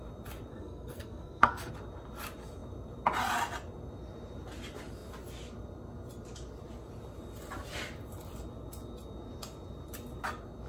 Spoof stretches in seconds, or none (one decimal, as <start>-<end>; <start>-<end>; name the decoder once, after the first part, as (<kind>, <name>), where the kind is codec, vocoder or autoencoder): 0.5-1.7 (codec, SNAC)